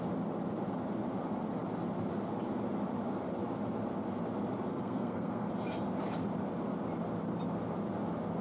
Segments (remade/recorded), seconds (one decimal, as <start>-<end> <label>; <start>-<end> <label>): 0.0-4.7 recorded; 4.7-5.5 remade; 5.5-8.4 recorded

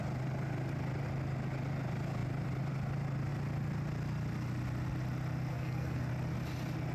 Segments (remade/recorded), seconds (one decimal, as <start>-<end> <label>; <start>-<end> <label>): 0.0-5.5 recorded; 5.5-6.1 remade; 6.1-6.9 recorded

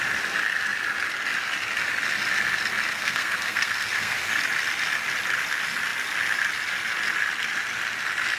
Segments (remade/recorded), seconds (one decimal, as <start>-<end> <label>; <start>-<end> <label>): 0.0-2.9 recorded; 2.9-4.3 remade; 4.3-8.4 recorded

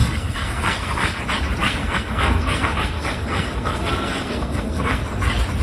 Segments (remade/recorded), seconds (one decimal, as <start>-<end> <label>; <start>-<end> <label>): 0.0-1.2 remade; 1.2-1.6 recorded; 1.6-5.0 remade; 5.0-5.6 recorded

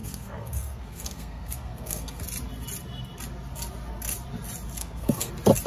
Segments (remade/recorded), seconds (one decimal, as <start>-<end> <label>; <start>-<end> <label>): 0.0-2.2 remade; 2.2-4.8 recorded; 4.8-5.3 remade; 5.3-5.7 recorded